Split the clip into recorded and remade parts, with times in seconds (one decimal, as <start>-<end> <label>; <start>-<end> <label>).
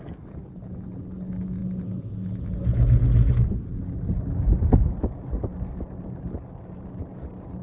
0.0-7.6 recorded